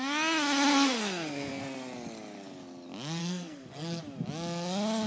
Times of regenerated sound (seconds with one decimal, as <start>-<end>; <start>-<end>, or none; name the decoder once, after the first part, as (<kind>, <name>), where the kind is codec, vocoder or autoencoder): 0.7-1.6 (codec, SNAC); 3.2-4.0